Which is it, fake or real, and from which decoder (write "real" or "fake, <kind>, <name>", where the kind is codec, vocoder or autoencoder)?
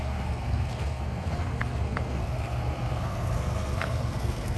fake, codec, SNAC